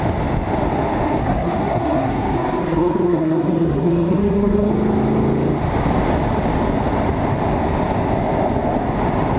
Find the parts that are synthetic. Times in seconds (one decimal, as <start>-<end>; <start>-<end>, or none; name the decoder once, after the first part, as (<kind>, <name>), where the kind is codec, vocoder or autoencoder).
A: 1.2-4.7 (codec, SNAC)

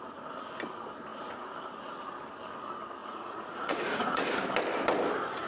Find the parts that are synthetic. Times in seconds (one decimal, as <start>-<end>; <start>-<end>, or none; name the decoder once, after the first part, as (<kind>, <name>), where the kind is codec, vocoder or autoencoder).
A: 3.0-4.3 (vocoder, Vocos)

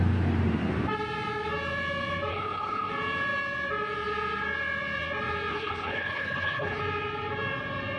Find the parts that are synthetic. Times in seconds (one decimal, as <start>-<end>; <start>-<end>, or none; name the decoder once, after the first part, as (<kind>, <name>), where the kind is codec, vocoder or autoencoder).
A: 2.3-2.9 (codec, HILCodec); 5.5-6.8

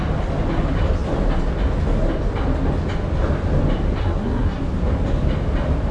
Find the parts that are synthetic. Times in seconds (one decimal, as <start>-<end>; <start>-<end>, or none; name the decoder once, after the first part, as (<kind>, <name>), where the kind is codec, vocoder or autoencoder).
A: 4.0-4.6 (codec, SNAC)

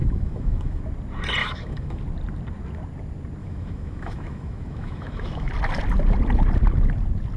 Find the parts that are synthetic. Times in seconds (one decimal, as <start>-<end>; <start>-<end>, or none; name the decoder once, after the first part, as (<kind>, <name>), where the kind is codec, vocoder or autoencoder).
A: 0.0-0.8 (autoencoder, DAC-VAE); 1.4-2.0; 3.4-5.5